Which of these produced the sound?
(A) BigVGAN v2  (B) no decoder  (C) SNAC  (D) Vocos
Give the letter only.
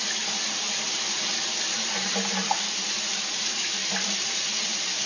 A